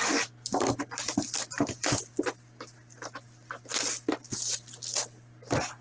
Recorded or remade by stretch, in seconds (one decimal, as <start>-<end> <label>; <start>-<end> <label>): 0.0-5.8 recorded